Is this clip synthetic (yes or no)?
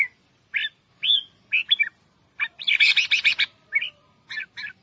no